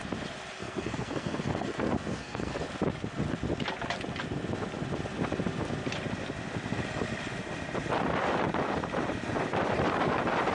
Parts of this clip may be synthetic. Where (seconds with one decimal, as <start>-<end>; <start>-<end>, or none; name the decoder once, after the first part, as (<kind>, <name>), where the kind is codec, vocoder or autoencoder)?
0.6-2.6 (codec, SNAC)

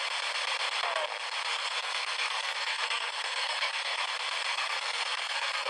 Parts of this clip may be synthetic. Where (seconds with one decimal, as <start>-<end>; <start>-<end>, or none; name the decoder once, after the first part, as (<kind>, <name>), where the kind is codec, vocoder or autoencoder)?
1.5-4.0 (codec, SNAC); 4.5-5.7

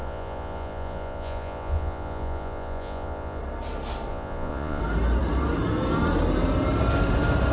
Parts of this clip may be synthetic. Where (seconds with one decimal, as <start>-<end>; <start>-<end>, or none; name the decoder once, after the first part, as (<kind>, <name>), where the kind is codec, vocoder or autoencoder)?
0.0-3.4 (vocoder, Vocos); 4.1-4.8

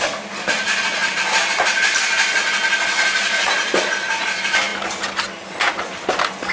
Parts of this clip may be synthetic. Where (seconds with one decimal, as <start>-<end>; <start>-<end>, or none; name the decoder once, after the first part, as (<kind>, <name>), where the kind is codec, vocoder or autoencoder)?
none

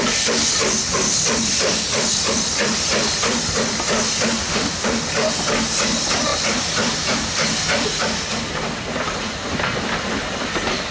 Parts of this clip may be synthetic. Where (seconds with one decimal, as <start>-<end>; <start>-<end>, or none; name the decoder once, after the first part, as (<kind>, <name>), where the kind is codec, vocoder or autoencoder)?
4.4-5.0 (autoencoder, DAC-VAE)

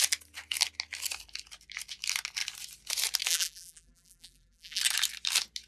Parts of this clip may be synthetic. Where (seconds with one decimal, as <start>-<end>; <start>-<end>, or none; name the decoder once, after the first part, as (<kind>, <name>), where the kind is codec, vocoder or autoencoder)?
3.3-4.8 (vocoder, BigVGAN v2)